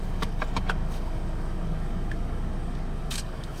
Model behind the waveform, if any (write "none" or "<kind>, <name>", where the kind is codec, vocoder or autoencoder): codec, DAC